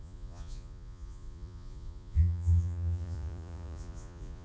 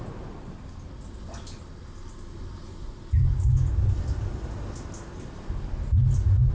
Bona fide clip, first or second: second